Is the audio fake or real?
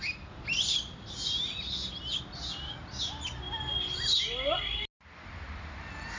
real